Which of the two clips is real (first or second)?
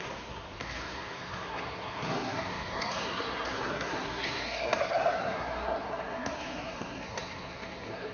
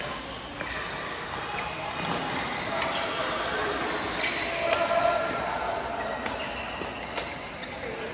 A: second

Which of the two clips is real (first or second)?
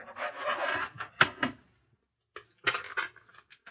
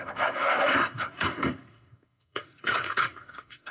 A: first